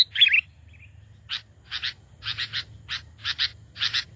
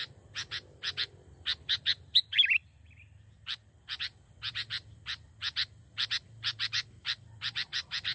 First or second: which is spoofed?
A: second